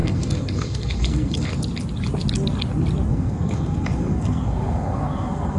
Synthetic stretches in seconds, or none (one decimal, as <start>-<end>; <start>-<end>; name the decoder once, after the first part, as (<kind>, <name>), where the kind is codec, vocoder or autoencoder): 0.0-1.5 (codec, SNAC); 3.1-5.6